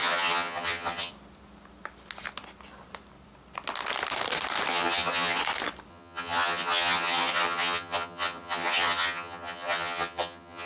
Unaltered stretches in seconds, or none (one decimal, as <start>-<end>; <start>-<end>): 1.1-4.7; 5.4-5.9

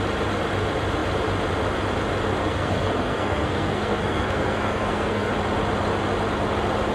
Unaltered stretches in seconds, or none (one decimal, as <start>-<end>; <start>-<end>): 0.0-2.4; 5.3-6.9

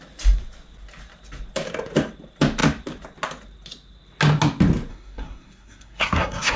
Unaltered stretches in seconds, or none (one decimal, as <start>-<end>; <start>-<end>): 0.0-4.9

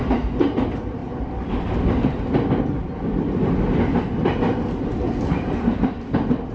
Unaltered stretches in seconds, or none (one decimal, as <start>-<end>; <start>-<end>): 0.0-6.5

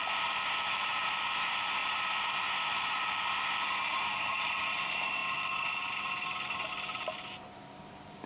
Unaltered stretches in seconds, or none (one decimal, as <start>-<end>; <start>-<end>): 5.2-6.7

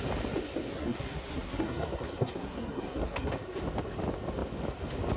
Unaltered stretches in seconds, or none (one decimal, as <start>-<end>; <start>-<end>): 0.0-0.7; 3.3-5.2

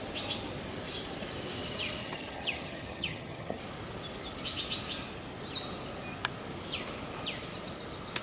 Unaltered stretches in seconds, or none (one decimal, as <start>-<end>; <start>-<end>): 0.0-2.0; 3.6-8.2

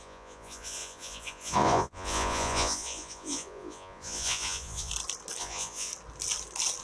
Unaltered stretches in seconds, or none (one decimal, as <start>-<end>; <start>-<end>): 4.9-5.4; 5.9-6.8